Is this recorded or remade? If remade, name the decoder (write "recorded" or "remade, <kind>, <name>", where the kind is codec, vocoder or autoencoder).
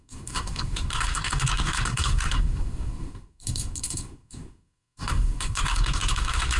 remade, codec, SNAC